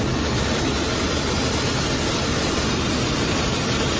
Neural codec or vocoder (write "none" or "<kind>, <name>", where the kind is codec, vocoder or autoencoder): none